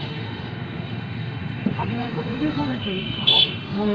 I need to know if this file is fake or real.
fake